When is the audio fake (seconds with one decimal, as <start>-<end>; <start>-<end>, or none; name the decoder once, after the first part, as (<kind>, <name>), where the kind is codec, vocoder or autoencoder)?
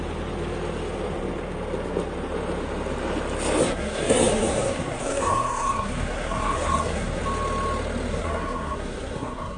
3.6-7.2 (codec, SNAC); 8.1-9.6